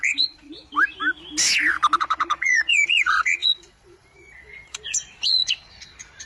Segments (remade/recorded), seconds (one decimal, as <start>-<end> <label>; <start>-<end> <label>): 0.0-0.5 remade; 0.5-2.0 recorded; 2.0-6.3 remade